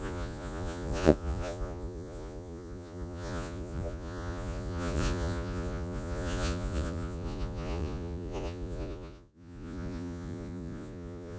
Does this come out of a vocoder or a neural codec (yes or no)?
yes